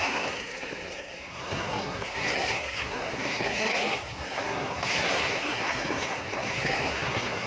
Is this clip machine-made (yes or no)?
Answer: yes